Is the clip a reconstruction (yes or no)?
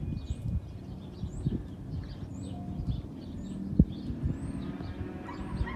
no